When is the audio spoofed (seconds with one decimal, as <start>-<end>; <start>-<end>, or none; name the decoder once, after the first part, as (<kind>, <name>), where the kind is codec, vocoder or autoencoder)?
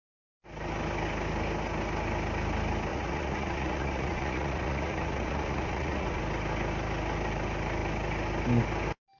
2.9-6.2 (vocoder, Vocos)